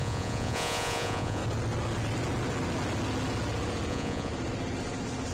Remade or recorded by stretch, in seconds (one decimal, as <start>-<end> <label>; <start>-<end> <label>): 0.0-1.4 remade; 1.4-3.9 recorded; 3.9-4.3 remade; 4.3-5.3 recorded